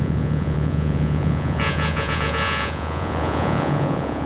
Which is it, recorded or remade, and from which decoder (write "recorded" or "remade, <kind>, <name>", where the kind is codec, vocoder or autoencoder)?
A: remade, vocoder, Vocos